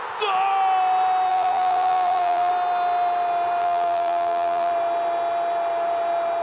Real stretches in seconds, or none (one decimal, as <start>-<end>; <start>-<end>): 0.0-1.3; 2.5-3.6; 4.7-6.4